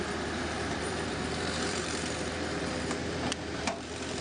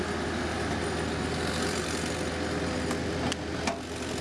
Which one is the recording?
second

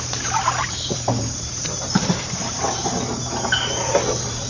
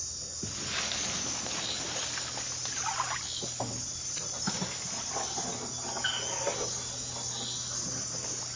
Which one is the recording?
second